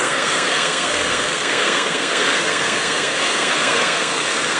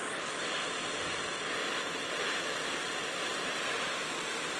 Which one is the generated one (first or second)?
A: first